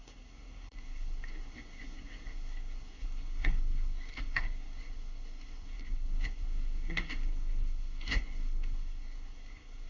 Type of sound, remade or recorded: remade